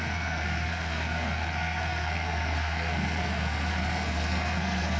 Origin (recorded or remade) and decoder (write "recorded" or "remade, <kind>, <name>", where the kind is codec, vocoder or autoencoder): remade, codec, SNAC